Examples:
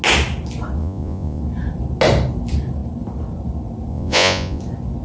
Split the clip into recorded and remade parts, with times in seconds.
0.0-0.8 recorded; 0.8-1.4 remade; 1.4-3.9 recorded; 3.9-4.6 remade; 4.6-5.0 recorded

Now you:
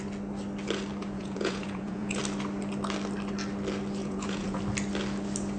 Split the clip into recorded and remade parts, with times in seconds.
0.0-1.0 recorded; 1.0-2.2 remade; 2.2-4.0 recorded; 4.0-4.6 remade; 4.6-5.6 recorded

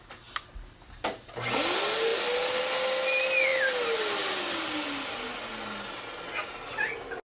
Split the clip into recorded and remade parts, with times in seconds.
0.0-7.3 recorded

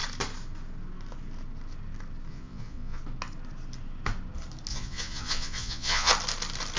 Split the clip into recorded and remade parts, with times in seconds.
0.0-2.3 recorded; 2.3-3.0 remade; 3.0-4.7 recorded; 4.7-6.1 remade; 6.1-6.8 recorded

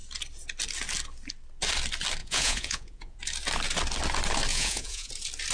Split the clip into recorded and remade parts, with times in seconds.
0.0-2.2 recorded; 2.2-3.2 remade; 3.2-4.5 recorded; 4.5-5.1 remade; 5.1-5.5 recorded

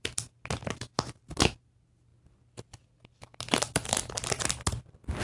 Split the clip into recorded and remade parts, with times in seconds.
0.0-5.2 recorded